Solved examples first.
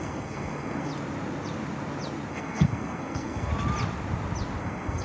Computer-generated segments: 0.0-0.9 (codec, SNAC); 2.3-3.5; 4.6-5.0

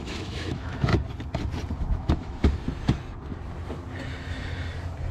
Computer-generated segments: 0.0-0.9 (autoencoder, DAC-VAE); 1.8-2.4

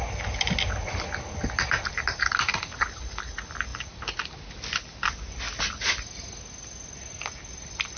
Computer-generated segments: none

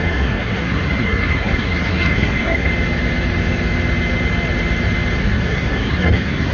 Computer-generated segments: 0.0-2.7 (codec, SNAC); 5.2-6.5

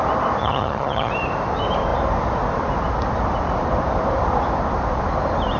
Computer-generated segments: 0.4-1.1 (vocoder, HiFi-GAN)